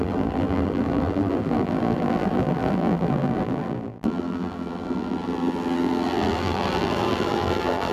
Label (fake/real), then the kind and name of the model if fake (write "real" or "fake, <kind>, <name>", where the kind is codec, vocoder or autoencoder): fake, vocoder, BigVGAN v2